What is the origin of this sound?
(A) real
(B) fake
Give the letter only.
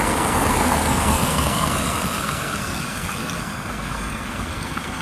B